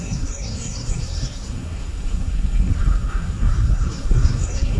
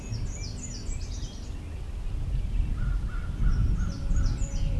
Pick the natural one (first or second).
second